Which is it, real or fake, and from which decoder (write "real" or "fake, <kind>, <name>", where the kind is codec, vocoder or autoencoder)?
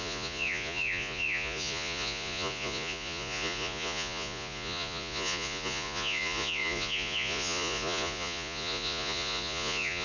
fake, vocoder, Vocos